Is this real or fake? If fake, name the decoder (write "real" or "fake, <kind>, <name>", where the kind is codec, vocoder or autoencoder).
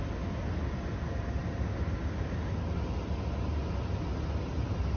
real